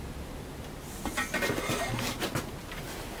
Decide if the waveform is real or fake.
real